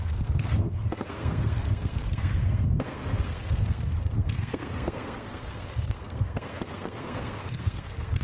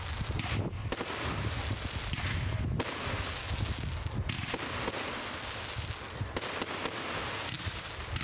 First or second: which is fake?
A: first